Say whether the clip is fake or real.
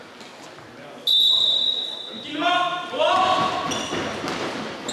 real